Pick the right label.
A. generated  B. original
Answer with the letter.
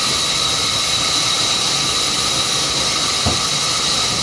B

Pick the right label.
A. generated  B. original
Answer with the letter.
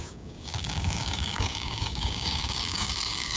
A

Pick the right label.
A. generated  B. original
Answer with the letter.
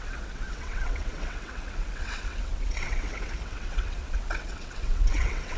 A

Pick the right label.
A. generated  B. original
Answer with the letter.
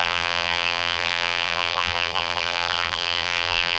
A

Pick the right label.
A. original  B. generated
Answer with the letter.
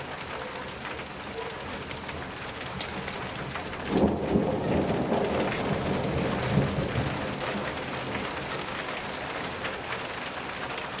A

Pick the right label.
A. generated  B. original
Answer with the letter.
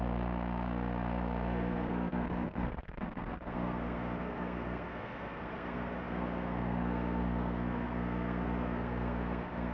A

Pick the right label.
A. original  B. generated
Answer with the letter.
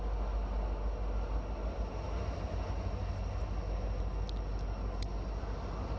A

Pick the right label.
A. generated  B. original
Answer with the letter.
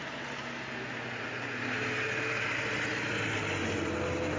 B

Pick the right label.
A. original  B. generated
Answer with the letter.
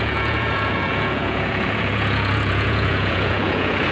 B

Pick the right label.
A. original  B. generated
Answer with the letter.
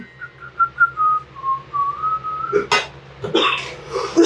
A